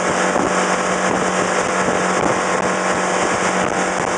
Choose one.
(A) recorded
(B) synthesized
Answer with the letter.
A